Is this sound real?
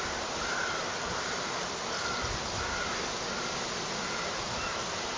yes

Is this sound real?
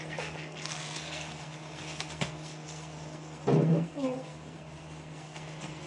no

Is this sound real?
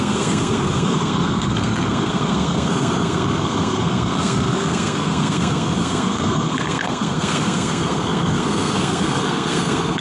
no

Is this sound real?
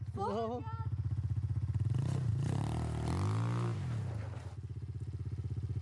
yes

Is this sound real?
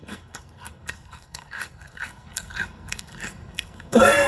no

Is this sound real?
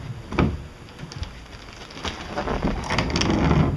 yes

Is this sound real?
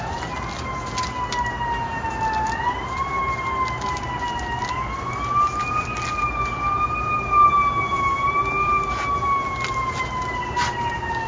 yes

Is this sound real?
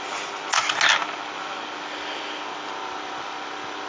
yes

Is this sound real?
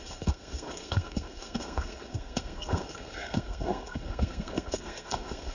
no